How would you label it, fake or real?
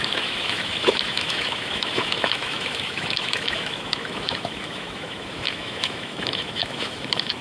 fake